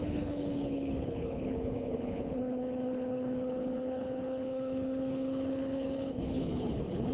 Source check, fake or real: fake